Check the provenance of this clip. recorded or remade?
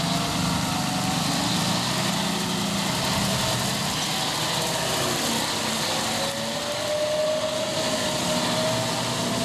recorded